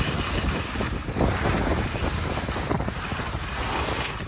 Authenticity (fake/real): real